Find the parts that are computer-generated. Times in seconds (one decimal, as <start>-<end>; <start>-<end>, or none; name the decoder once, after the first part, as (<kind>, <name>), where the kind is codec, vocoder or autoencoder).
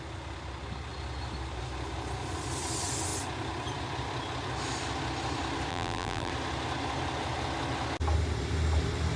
5.7-6.3 (vocoder, BigVGAN v2)